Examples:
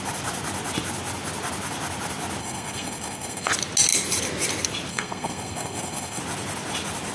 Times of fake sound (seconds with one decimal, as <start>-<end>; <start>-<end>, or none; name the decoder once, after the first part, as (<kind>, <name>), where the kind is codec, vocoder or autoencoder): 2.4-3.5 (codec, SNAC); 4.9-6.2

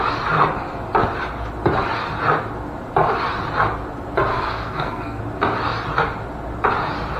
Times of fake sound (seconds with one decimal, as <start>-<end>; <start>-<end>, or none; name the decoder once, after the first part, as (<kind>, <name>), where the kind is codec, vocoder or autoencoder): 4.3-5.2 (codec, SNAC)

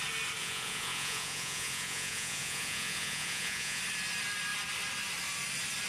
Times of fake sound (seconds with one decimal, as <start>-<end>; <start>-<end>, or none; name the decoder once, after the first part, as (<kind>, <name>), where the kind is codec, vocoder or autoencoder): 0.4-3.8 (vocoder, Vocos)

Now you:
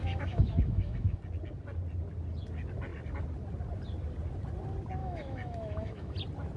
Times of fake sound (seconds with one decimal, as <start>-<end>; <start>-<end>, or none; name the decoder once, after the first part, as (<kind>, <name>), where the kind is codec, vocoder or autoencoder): 0.0-1.2 (autoencoder, DAC-VAE); 5.0-6.1

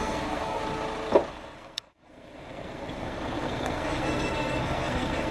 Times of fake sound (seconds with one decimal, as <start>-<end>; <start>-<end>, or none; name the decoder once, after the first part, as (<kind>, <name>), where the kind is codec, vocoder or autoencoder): 0.0-0.6 (codec, SNAC); 1.3-5.3